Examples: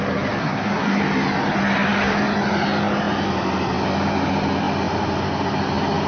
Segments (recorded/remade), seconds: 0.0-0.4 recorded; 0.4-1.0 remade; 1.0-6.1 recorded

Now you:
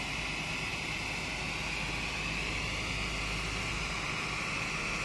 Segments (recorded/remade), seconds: 0.0-5.0 recorded

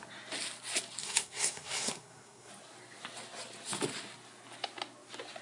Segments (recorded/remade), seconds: 0.0-1.0 recorded; 1.0-2.5 remade; 2.5-5.4 recorded